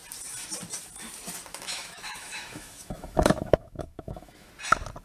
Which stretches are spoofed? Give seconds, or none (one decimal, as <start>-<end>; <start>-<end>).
1.5-4.5